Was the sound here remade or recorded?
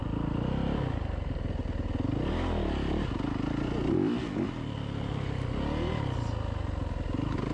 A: recorded